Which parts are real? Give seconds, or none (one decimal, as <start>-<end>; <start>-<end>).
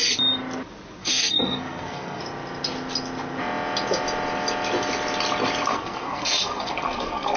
0.0-1.0; 2.2-5.7